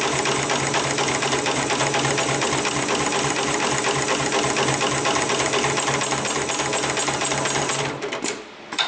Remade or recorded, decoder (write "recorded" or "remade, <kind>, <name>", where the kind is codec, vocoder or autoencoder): recorded